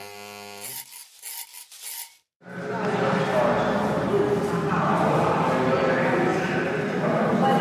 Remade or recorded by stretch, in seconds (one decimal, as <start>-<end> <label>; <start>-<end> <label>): 0.0-7.6 recorded